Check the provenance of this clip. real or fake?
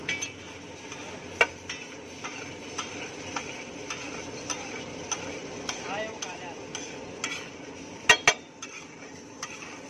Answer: real